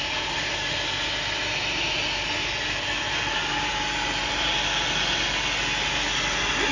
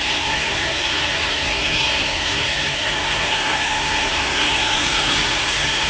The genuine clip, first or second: first